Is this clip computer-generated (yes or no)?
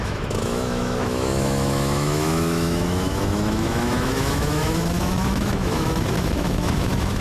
yes